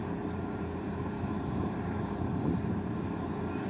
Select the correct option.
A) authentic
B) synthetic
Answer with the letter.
B